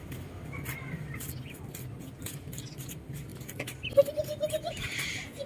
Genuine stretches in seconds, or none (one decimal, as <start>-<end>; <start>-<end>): 0.0-3.3; 4.1-5.5